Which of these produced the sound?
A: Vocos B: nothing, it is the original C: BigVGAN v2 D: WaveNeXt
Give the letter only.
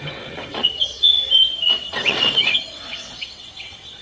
D